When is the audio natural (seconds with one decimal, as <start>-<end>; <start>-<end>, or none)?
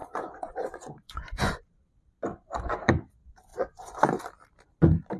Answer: 1.7-2.3; 2.9-3.5; 4.2-5.2